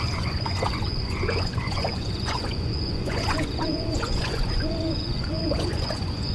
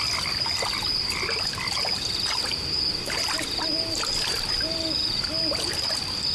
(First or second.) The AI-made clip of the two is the first